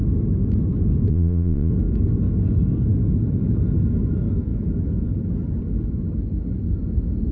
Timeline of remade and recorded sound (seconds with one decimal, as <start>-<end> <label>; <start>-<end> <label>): 0.0-1.1 recorded; 1.1-1.7 remade; 1.7-7.3 recorded